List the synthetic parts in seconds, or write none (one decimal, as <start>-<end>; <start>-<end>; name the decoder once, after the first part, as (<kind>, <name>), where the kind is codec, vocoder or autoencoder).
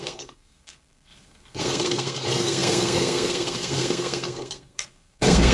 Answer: 0.0-5.5 (codec, SNAC)